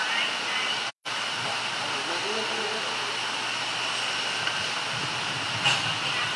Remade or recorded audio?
recorded